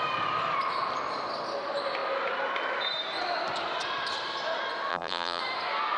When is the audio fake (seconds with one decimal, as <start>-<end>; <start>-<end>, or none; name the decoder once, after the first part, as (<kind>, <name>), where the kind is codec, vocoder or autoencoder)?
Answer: 4.9-5.4 (vocoder, BigVGAN v2)